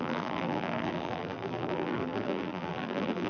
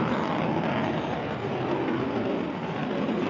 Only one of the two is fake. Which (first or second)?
first